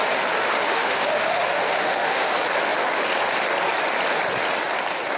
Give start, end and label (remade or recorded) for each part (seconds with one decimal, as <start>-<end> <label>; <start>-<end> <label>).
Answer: 0.0-0.4 recorded; 0.4-2.3 remade; 2.3-5.2 recorded